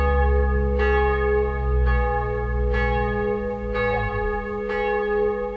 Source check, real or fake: real